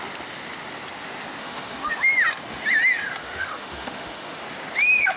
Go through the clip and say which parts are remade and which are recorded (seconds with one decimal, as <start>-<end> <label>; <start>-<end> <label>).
0.0-1.4 recorded; 1.4-1.9 remade; 1.9-3.2 recorded; 3.2-4.4 remade; 4.4-5.2 recorded